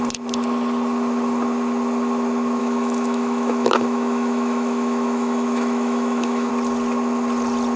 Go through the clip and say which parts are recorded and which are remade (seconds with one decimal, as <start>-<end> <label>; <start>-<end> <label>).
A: 0.0-2.6 recorded; 2.6-6.5 remade; 6.5-7.8 recorded